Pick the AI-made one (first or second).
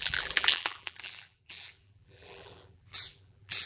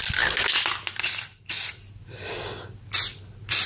first